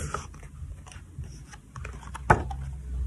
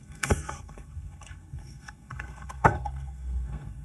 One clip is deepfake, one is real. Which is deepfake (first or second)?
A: second